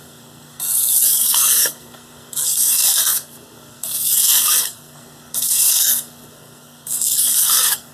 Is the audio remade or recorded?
remade